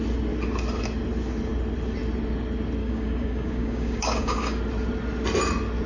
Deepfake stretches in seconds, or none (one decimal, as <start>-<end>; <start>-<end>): 2.8-4.6